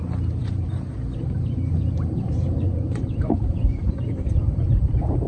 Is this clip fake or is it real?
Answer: fake